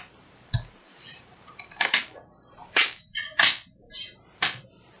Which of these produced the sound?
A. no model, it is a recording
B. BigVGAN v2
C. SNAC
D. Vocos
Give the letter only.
B